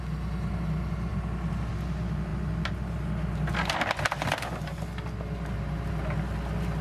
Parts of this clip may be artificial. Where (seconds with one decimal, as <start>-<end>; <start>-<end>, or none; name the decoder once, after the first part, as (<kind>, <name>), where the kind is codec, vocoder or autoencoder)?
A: none